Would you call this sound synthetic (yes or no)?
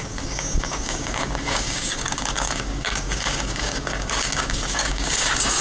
yes